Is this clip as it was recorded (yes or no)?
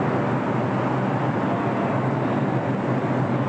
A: yes